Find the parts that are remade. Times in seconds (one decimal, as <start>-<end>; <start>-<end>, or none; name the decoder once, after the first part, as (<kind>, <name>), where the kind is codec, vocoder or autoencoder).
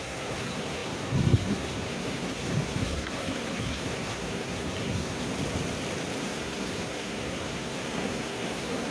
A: 0.0-5.3 (codec, SNAC); 6.2-8.9